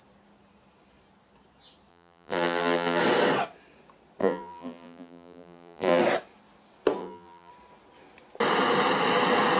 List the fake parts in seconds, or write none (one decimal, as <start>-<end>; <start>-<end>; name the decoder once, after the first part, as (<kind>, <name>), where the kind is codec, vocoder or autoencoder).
1.9-3.0 (vocoder, BigVGAN v2); 4.2-6.0; 7.0-7.5